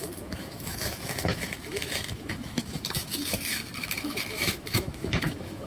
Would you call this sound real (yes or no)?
no